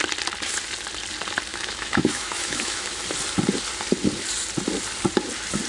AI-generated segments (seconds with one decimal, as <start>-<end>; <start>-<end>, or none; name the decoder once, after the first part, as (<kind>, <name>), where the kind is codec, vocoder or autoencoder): 1.5-3.0 (autoencoder, DAC-VAE)